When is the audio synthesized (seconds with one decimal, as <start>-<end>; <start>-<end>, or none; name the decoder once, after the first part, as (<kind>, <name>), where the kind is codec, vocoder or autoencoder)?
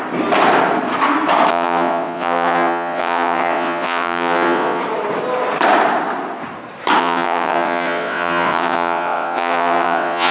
1.5-4.8 (vocoder, WaveNeXt); 7.0-10.3